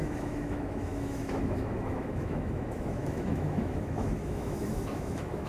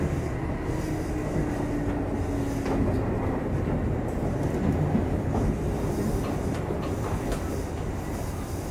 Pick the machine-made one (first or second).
first